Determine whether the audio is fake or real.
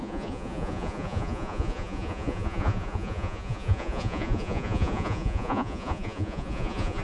fake